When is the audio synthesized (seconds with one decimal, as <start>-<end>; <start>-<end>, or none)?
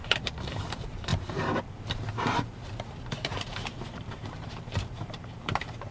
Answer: 0.0-5.9